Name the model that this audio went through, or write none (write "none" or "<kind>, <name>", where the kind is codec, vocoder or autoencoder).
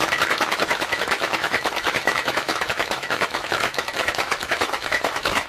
autoencoder, DAC-VAE